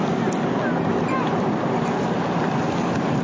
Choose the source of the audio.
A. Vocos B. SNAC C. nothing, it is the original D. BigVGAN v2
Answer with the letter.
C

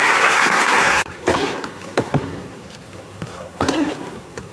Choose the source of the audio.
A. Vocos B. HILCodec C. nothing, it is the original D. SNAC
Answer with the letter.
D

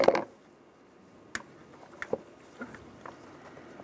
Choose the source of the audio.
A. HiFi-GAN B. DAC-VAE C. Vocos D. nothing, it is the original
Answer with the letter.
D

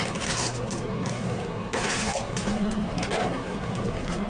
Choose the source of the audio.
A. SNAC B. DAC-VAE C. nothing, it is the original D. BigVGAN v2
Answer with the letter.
A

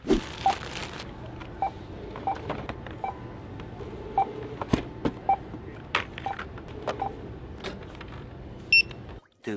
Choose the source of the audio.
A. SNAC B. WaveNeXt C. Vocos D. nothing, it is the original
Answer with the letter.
D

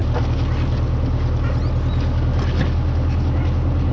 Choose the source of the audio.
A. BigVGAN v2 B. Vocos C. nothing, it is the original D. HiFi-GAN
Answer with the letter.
C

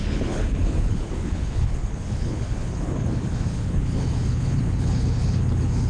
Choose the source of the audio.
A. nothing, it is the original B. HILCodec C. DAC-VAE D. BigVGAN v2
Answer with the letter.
B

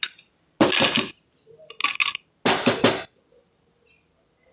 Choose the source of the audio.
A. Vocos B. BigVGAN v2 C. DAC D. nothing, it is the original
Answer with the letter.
D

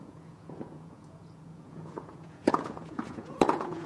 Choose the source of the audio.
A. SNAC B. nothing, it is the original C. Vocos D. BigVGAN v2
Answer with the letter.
C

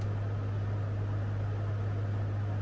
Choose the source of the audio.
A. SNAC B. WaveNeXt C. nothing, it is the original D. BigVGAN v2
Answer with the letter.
C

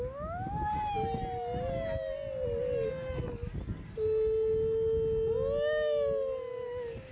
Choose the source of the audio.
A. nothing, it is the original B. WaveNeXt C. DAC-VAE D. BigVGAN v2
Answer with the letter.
A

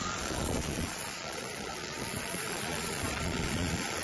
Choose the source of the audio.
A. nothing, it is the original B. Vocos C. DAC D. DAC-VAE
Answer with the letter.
B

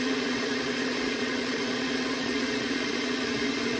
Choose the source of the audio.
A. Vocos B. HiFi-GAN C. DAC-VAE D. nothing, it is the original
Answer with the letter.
A